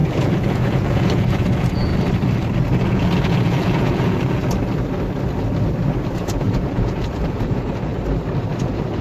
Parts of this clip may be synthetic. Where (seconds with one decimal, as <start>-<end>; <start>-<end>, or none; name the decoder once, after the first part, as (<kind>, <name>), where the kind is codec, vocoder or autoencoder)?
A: 0.0-1.9 (vocoder, Vocos); 2.8-4.4; 6.2-7.9; 8.6-9.0